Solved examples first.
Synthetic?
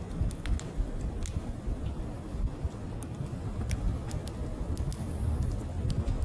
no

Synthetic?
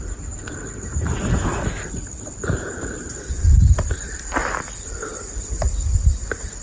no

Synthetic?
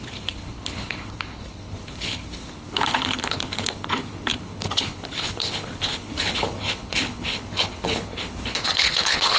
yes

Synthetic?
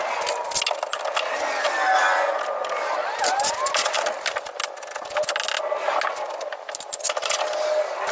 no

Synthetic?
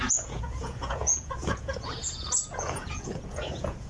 yes